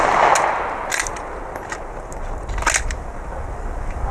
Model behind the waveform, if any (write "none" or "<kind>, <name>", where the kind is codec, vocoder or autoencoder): none